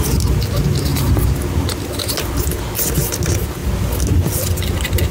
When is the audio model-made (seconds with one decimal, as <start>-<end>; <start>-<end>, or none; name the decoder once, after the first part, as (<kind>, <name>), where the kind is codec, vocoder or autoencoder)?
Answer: none

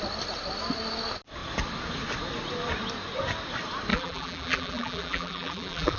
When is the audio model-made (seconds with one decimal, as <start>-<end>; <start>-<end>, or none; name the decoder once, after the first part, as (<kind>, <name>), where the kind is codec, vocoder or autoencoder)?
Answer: 3.9-6.0 (vocoder, BigVGAN v2)

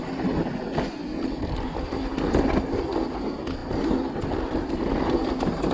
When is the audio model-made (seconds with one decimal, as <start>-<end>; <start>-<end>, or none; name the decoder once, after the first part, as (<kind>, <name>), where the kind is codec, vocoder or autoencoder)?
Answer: none

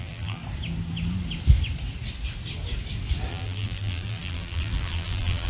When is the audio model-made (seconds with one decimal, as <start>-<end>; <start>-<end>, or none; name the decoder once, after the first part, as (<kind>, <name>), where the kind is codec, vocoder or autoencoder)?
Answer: 0.0-0.4 (vocoder, BigVGAN v2); 3.3-5.5

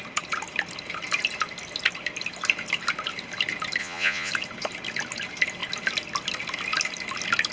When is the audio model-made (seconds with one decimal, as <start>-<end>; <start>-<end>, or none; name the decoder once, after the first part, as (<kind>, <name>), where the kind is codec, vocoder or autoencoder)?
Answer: 3.8-4.3 (vocoder, Vocos)

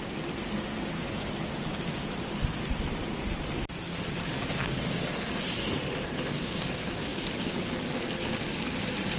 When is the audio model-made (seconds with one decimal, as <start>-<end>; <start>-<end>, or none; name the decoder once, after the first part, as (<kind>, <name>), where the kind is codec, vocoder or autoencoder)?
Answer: none

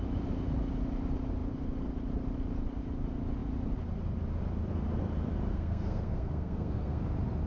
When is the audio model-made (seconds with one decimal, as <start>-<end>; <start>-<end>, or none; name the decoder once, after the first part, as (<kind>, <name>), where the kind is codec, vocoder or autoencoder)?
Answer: 5.5-7.0 (codec, SNAC)